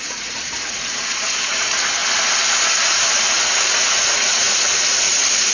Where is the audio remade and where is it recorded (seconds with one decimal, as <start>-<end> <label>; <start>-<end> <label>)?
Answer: 0.0-2.0 remade; 2.0-3.1 recorded; 3.1-5.5 remade